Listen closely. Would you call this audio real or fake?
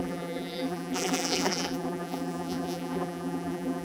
fake